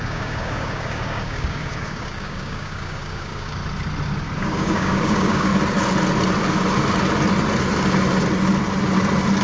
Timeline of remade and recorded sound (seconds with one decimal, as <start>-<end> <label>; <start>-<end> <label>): 0.0-3.6 remade; 3.6-4.4 recorded; 4.4-5.5 remade; 5.5-9.4 recorded